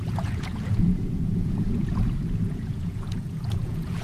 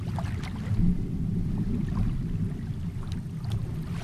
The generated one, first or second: first